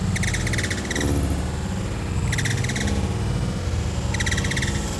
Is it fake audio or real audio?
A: real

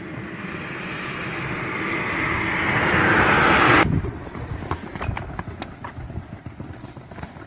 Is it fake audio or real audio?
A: real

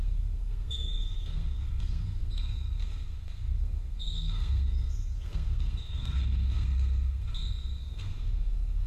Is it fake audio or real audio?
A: fake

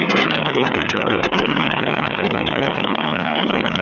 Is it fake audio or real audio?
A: fake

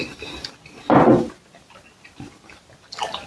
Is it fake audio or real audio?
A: real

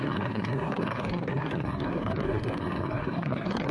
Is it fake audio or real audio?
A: fake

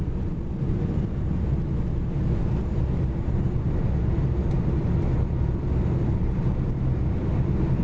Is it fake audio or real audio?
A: real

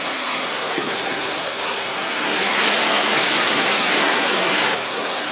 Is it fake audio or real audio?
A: fake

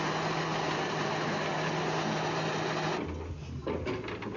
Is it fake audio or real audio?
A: real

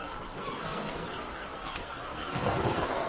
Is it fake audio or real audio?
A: fake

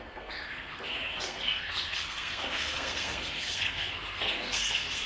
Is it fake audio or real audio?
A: fake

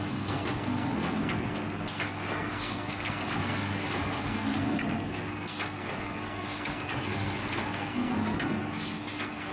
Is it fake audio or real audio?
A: fake